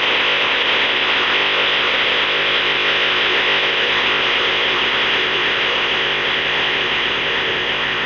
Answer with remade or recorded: remade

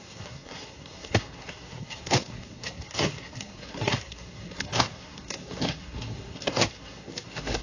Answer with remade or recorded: remade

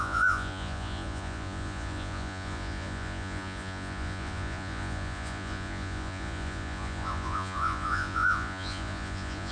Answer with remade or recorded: remade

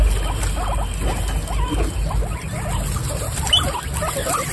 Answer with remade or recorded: recorded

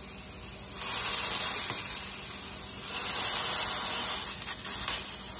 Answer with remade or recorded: recorded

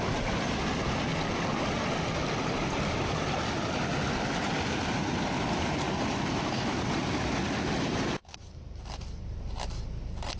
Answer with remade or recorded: recorded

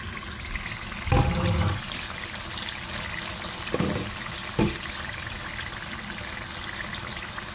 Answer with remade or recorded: recorded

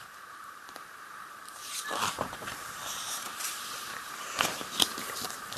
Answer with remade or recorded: remade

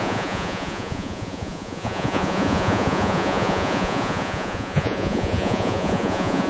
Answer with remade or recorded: remade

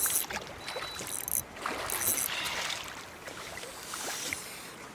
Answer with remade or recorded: recorded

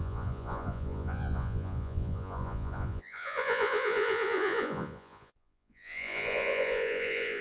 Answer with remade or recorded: remade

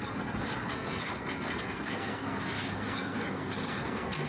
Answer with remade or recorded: remade